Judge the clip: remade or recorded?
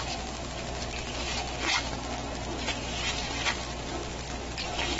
recorded